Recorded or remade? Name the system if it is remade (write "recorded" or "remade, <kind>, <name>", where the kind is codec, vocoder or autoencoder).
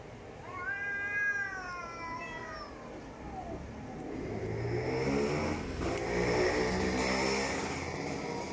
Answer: recorded